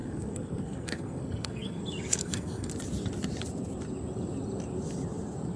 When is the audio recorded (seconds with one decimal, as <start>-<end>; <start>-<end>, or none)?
1.8-2.2; 2.7-5.6